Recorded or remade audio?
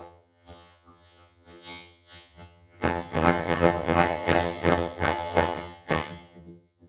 remade